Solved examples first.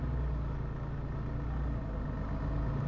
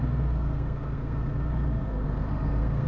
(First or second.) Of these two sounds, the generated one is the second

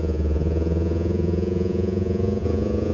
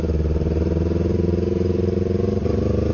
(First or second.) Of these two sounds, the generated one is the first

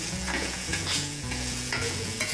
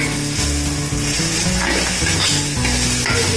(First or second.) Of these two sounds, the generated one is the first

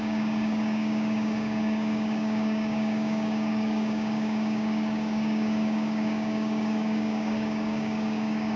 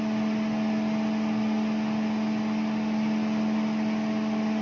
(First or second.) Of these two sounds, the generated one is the first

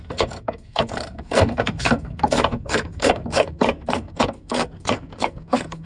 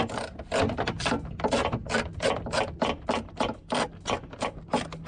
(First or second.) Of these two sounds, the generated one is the first